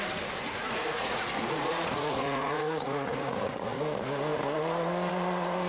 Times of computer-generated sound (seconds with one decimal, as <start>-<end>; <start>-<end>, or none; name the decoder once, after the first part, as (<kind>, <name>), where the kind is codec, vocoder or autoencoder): 0.4-3.8 (vocoder, Vocos)